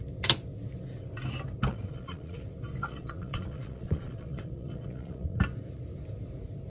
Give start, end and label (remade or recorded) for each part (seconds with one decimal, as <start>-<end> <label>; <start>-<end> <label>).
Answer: 0.0-1.7 recorded; 1.7-2.4 remade; 2.4-2.8 recorded; 2.8-5.4 remade; 5.4-6.7 recorded